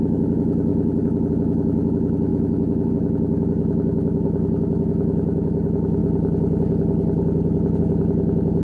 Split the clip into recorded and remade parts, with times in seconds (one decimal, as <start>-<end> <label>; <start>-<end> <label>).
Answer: 0.0-0.7 remade; 0.7-1.3 recorded; 1.3-6.0 remade; 6.0-7.8 recorded; 7.8-8.6 remade